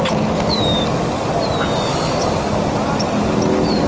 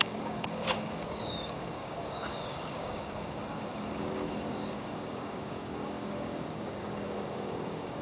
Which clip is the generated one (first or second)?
second